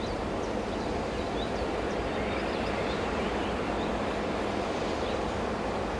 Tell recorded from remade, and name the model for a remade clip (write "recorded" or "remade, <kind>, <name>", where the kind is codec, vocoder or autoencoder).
remade, vocoder, BigVGAN v2